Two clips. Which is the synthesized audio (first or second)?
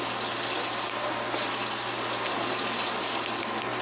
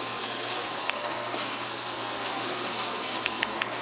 second